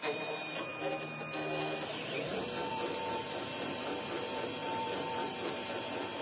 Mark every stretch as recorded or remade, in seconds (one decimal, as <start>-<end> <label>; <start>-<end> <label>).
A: 0.0-0.7 remade; 0.7-2.7 recorded; 2.7-6.2 remade